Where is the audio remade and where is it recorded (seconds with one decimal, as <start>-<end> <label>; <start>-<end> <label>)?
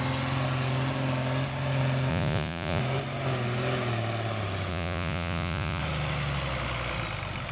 0.0-2.1 recorded; 2.1-2.8 remade; 2.8-4.7 recorded; 4.7-5.8 remade; 5.8-7.5 recorded